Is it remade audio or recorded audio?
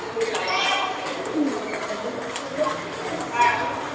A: recorded